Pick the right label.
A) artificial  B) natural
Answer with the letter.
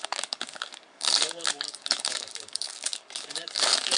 A